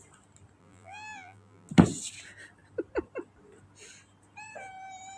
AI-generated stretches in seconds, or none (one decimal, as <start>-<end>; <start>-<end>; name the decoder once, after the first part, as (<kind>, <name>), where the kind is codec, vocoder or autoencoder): 0.6-1.7 (vocoder, BigVGAN v2)